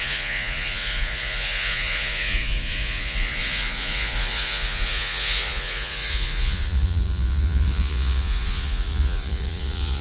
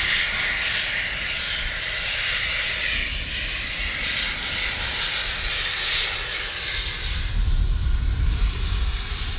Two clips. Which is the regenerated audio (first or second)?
first